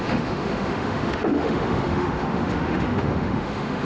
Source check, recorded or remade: remade